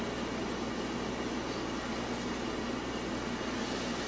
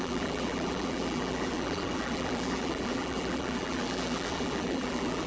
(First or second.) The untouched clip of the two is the first